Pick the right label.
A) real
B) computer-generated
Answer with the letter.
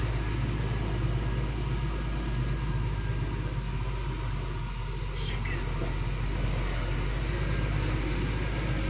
A